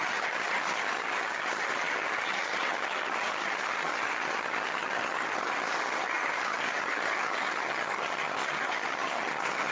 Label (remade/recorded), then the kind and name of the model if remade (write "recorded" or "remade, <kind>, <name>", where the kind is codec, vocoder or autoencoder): remade, vocoder, HiFi-GAN